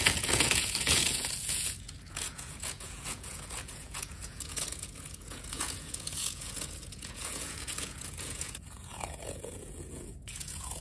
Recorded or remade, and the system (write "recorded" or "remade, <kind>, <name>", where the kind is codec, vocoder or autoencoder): remade, vocoder, Vocos